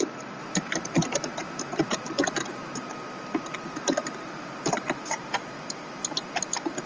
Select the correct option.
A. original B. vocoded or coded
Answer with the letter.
B